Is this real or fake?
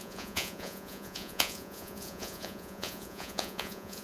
fake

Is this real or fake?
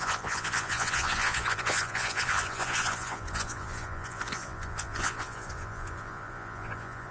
fake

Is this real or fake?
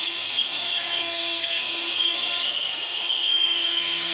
fake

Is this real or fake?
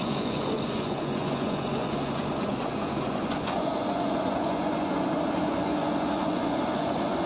fake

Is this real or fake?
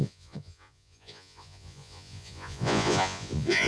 fake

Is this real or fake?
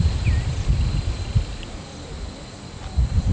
real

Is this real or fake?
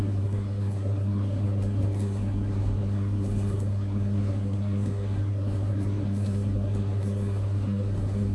fake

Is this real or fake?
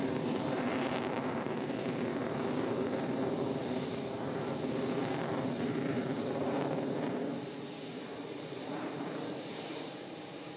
fake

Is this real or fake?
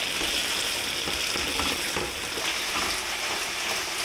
real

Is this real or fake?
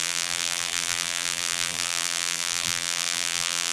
fake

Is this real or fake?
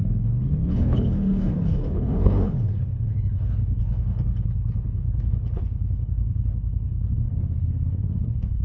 fake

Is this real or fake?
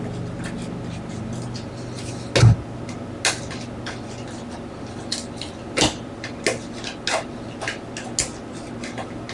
real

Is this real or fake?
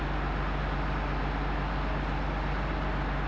real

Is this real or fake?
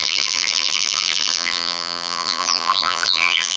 fake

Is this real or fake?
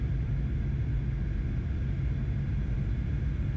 real